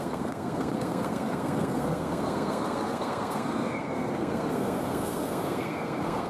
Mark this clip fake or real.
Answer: fake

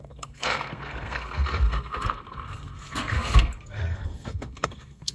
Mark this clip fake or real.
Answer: fake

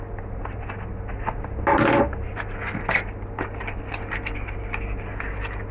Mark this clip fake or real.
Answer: real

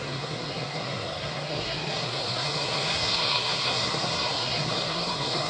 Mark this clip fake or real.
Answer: fake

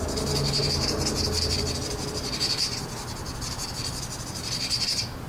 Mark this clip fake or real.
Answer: real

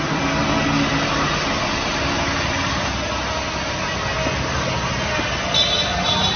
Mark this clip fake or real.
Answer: real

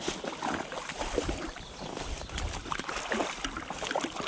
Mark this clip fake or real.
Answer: real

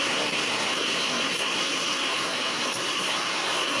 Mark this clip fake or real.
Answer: fake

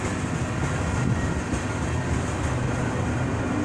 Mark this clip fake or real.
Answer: real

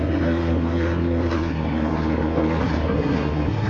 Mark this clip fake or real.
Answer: fake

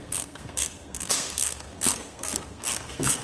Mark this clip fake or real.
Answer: fake